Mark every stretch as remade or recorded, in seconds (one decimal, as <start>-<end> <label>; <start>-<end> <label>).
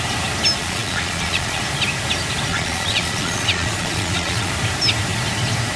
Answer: 0.0-0.6 recorded; 0.6-1.6 remade; 1.6-2.5 recorded; 2.5-4.5 remade; 4.5-5.8 recorded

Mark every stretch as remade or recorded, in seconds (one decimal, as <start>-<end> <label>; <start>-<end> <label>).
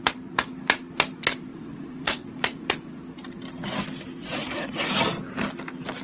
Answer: 0.0-1.5 recorded; 1.5-3.0 remade; 3.0-4.2 recorded; 4.2-5.0 remade; 5.0-6.0 recorded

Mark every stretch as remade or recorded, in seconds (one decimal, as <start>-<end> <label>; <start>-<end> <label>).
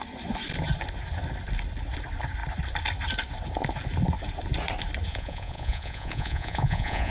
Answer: 0.0-5.1 recorded; 5.1-7.1 remade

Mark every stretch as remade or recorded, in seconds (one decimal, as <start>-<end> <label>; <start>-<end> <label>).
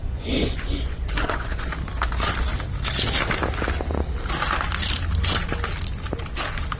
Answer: 0.0-1.7 remade; 1.7-6.8 recorded